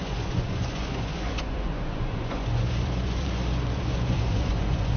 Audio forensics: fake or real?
fake